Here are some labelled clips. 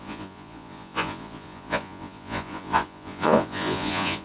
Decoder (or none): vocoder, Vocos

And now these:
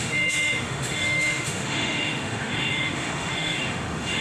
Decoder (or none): autoencoder, DAC-VAE